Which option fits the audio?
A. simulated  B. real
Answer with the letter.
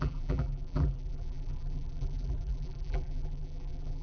A